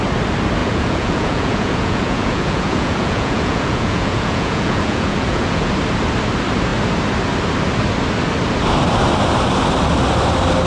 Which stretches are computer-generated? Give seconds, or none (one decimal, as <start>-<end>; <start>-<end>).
0.6-5.7